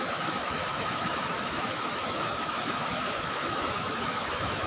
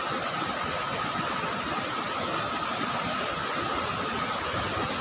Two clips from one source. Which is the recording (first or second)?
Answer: second